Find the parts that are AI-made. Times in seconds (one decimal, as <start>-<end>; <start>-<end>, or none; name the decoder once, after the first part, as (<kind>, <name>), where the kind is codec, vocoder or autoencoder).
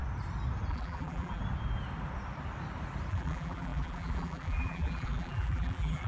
0.7-1.4 (vocoder, BigVGAN v2); 3.1-6.1